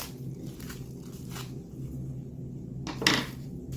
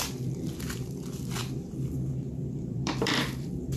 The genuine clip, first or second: first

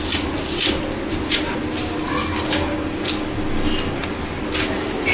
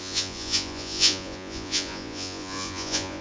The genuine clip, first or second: first